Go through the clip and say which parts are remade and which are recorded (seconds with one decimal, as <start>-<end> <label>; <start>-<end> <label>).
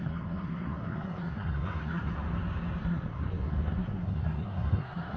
0.0-2.1 remade; 2.1-2.8 recorded; 2.8-5.2 remade